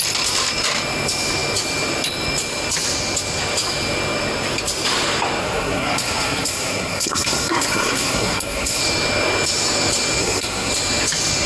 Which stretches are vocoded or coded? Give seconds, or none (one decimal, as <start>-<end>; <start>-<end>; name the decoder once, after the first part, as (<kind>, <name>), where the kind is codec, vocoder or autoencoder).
5.4-8.8 (codec, SNAC); 10.2-10.7